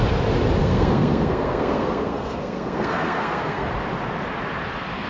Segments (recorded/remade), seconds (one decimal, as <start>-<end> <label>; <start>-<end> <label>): 0.0-0.6 recorded; 0.6-3.7 remade; 3.7-5.1 recorded